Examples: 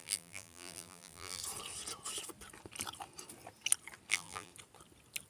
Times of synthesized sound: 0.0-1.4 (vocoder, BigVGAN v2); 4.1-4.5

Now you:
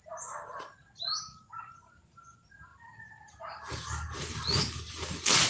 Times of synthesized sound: 1.1-1.6 (autoencoder, DAC-VAE)